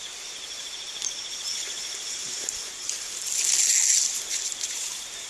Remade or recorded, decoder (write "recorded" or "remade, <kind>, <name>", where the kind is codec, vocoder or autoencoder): recorded